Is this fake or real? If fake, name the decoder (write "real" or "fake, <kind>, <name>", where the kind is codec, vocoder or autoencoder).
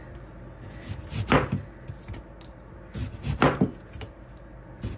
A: real